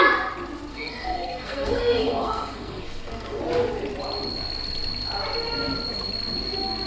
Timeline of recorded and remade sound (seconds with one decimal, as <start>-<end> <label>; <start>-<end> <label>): 0.0-0.7 recorded; 0.7-3.4 remade; 3.4-6.9 recorded